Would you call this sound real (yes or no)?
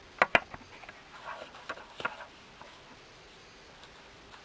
yes